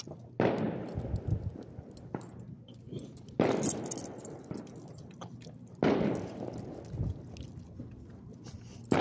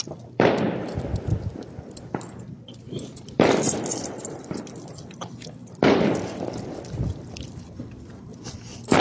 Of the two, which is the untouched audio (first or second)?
first